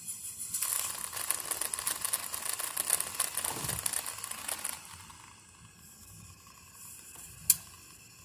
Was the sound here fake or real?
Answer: real